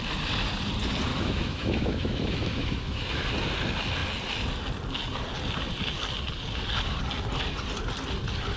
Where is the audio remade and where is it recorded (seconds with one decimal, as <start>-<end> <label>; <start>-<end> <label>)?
0.0-1.1 recorded; 1.1-3.0 remade; 3.0-8.6 recorded